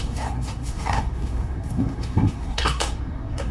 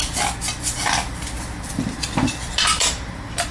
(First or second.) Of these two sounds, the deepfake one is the first